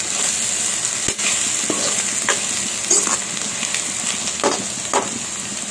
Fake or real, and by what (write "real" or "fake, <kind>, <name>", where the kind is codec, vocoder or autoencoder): real